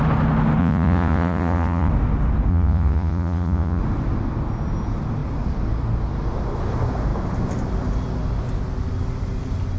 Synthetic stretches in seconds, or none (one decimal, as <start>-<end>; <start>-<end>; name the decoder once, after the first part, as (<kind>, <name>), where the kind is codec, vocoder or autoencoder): 0.6-1.9 (vocoder, Vocos); 2.5-3.8